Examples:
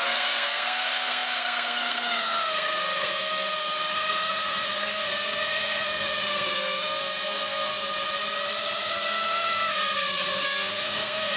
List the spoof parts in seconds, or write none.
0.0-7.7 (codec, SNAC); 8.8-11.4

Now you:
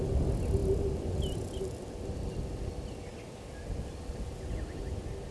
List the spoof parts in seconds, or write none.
none

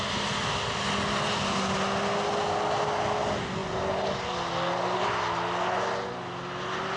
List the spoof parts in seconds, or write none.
none

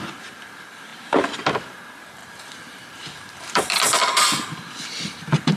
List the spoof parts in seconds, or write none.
0.0-0.9 (vocoder, BigVGAN v2); 1.5-5.6

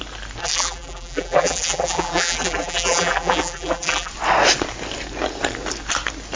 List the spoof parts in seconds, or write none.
0.4-4.1 (vocoder, BigVGAN v2)